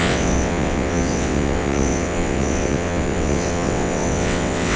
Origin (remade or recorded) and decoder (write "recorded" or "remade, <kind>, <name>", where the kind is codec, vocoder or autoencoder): remade, vocoder, WaveNeXt